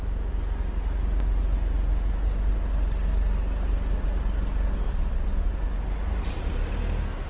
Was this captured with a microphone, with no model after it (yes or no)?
yes